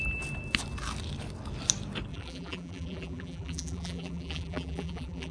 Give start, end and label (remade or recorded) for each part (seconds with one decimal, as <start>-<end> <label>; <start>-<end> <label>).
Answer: 0.0-2.1 recorded; 2.1-5.3 remade